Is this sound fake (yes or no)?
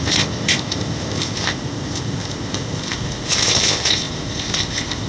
yes